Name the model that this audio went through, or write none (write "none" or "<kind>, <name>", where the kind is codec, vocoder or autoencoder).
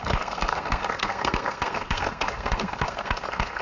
codec, SNAC